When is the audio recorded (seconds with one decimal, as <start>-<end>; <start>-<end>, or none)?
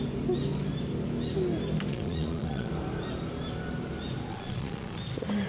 0.0-1.9; 2.7-4.3; 5.0-5.5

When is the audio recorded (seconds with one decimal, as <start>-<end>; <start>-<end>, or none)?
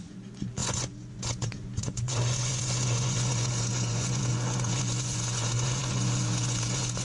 none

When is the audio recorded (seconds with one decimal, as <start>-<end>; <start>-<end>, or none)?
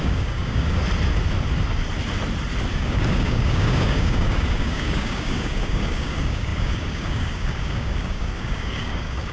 0.8-2.7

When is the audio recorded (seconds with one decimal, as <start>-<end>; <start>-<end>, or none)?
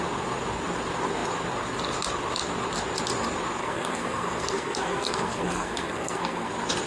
0.0-3.6; 6.5-6.9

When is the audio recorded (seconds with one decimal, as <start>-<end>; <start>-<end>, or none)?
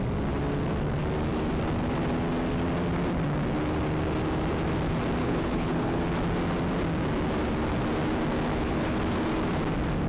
0.0-5.2; 6.0-8.5; 9.0-10.1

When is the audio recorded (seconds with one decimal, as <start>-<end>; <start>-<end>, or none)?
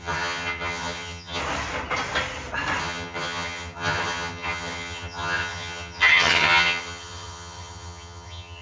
1.4-2.8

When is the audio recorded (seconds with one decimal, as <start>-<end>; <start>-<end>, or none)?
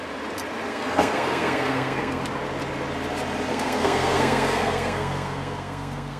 0.0-0.7; 2.2-3.5